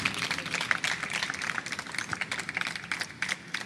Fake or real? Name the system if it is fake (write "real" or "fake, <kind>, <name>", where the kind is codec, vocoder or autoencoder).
real